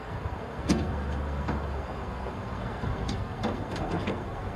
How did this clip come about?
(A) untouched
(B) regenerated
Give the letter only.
B